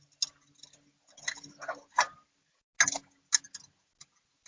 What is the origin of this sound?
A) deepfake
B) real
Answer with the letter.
B